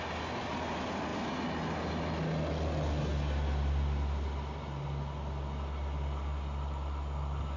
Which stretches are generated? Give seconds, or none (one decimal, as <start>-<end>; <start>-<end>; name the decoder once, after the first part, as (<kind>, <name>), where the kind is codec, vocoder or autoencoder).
none